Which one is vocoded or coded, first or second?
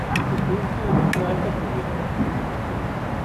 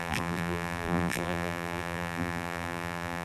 second